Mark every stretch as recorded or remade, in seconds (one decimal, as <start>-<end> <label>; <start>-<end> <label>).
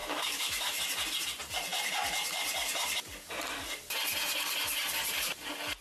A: 0.0-0.8 remade; 0.8-5.8 recorded